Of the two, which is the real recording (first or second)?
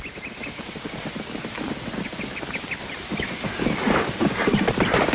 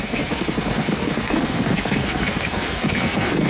first